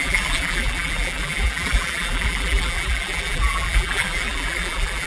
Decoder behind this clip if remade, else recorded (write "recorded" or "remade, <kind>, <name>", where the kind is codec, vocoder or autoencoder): remade, vocoder, BigVGAN v2